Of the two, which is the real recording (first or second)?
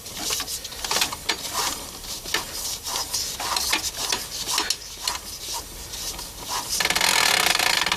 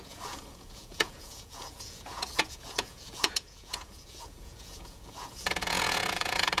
first